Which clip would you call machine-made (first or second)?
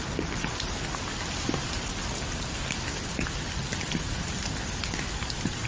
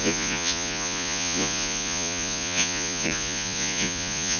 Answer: second